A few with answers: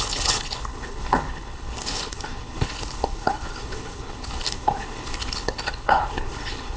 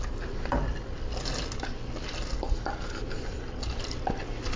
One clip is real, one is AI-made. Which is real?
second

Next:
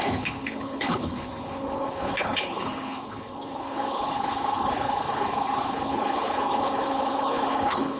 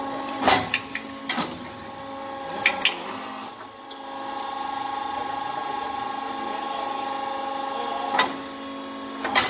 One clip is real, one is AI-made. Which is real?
second